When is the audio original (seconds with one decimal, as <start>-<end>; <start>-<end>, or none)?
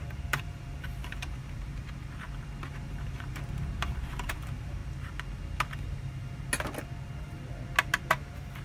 1.8-2.6; 4.8-8.0